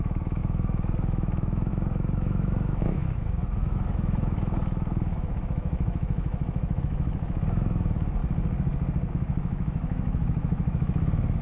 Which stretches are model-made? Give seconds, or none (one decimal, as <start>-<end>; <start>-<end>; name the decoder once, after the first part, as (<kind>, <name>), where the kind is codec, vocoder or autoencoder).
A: 0.0-8.2 (autoencoder, DAC-VAE); 9.1-11.4